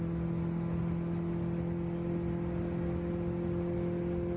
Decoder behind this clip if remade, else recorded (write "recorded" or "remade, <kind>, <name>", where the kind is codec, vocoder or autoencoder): recorded